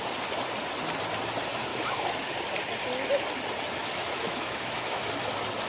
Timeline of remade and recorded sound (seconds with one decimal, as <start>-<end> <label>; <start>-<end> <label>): 0.0-1.7 recorded; 1.7-2.3 remade; 2.3-3.8 recorded; 3.8-5.0 remade; 5.0-5.7 recorded